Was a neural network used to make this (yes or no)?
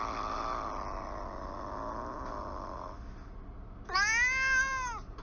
no